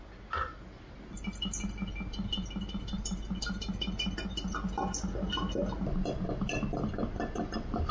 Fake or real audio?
real